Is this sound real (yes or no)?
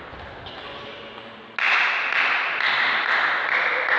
yes